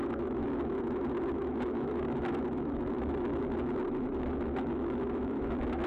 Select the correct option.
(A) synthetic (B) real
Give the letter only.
A